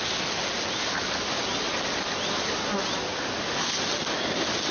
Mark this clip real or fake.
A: real